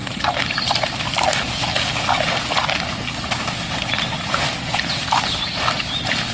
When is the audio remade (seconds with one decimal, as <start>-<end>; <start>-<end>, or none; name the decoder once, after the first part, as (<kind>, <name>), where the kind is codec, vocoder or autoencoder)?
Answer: none